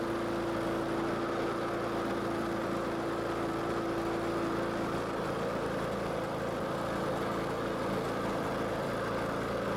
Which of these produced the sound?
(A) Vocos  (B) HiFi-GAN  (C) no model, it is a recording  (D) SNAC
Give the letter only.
C